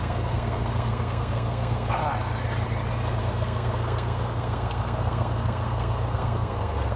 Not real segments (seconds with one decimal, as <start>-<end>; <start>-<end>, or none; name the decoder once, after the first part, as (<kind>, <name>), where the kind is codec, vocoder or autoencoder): 0.0-2.0 (codec, SNAC); 3.2-7.0